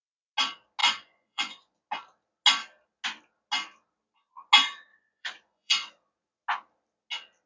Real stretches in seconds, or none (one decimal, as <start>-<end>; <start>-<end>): 0.0-0.8; 1.8-4.9; 5.9-7.5